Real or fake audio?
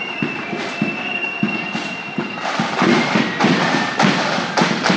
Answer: real